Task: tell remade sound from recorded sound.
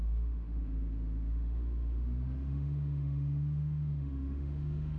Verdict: remade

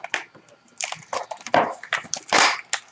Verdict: recorded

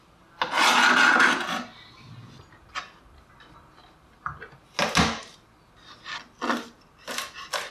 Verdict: recorded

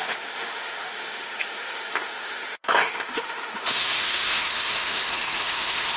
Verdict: remade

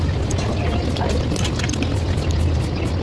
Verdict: recorded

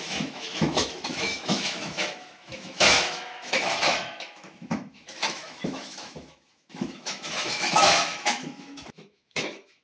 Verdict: remade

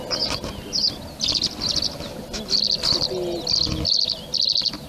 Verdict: recorded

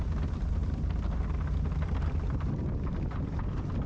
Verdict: recorded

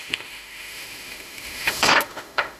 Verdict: remade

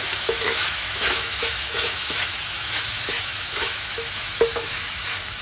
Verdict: remade